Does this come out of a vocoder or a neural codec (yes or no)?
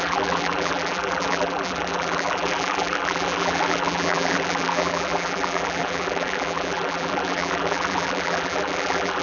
yes